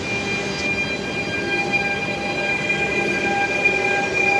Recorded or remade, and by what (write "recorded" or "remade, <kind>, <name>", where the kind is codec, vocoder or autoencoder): recorded